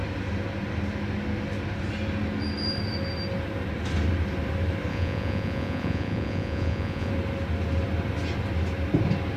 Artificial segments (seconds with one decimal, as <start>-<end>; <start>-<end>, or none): 4.9-7.1